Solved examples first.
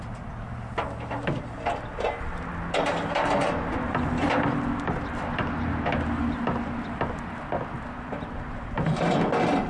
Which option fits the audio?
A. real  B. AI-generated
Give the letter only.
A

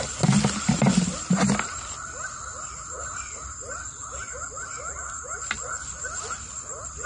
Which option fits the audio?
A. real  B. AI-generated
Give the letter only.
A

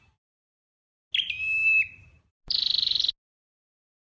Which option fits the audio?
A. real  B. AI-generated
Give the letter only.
A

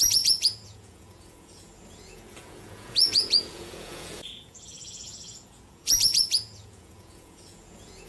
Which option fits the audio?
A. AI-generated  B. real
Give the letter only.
A